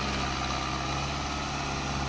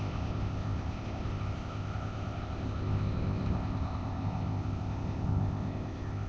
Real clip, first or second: first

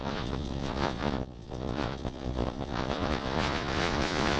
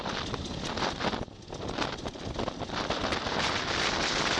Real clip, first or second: second